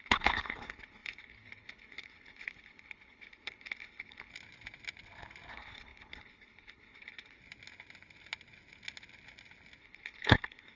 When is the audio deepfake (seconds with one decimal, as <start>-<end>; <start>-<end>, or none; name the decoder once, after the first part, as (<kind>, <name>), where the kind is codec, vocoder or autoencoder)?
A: 0.0-4.3 (codec, HILCodec); 5.5-7.4; 9.8-10.8